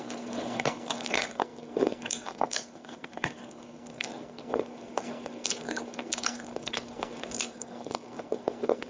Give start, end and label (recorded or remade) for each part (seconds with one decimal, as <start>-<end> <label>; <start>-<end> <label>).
0.0-8.9 remade

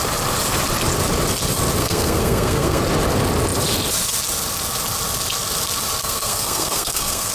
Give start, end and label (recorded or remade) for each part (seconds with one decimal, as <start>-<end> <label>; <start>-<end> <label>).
0.0-1.8 recorded; 1.8-2.8 remade; 2.8-6.0 recorded; 6.0-7.3 remade

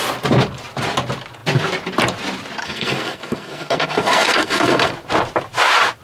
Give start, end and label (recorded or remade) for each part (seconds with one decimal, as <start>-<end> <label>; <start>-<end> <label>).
0.0-2.6 recorded; 2.6-4.9 remade; 4.9-6.0 recorded

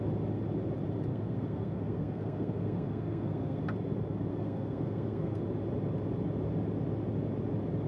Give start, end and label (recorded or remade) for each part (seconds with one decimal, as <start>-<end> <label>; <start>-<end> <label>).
0.0-1.1 recorded; 1.1-3.6 remade; 3.6-4.3 recorded; 4.3-5.4 remade; 5.4-7.9 recorded

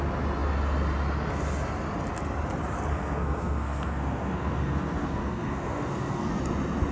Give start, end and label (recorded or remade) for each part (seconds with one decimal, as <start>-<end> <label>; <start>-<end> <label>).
0.0-2.9 recorded; 2.9-6.4 remade; 6.4-6.9 recorded

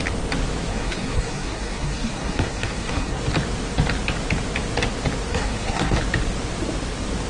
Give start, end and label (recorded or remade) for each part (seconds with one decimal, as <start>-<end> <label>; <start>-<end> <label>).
0.0-0.7 recorded; 0.7-3.2 remade; 3.2-5.3 recorded; 5.3-6.0 remade; 6.0-7.3 recorded

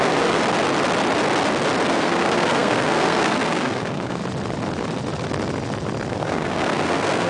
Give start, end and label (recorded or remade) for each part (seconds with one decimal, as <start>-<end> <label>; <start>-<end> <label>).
0.0-0.4 remade; 0.4-1.9 recorded; 1.9-4.2 remade; 4.2-6.1 recorded; 6.1-7.3 remade

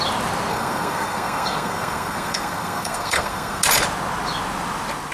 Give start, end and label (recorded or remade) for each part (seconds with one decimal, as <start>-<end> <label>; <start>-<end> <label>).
0.0-0.5 recorded; 0.5-3.6 remade; 3.6-5.1 recorded